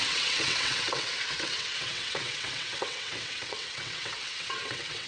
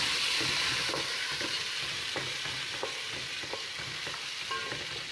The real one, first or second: second